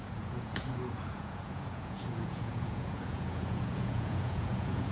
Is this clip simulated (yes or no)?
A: yes